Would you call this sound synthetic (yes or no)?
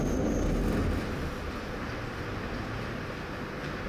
no